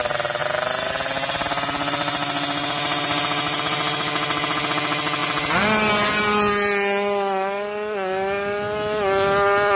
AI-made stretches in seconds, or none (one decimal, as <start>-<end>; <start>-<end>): 5.2-6.2